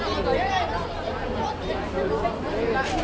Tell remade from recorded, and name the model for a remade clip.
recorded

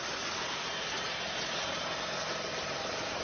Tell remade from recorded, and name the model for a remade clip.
recorded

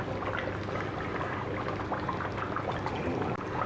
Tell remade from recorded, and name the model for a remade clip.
recorded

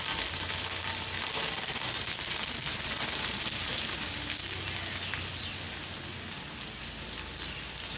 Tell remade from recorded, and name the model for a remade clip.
recorded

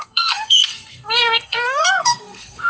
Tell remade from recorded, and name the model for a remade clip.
remade, codec, SNAC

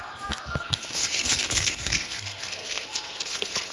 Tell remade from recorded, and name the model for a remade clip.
remade, codec, SNAC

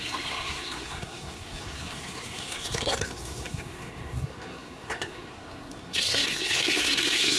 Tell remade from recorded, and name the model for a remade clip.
remade, codec, SNAC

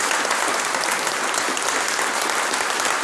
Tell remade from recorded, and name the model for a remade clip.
recorded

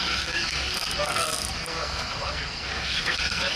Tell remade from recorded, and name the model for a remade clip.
remade, codec, SNAC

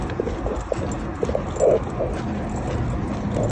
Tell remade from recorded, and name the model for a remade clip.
recorded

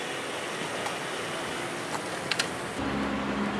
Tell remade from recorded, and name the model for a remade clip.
recorded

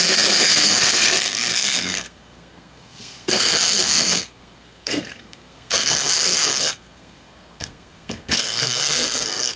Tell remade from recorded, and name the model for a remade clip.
remade, codec, SNAC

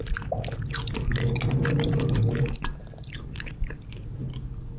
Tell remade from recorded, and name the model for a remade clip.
recorded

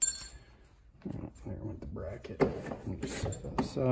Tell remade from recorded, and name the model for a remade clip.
recorded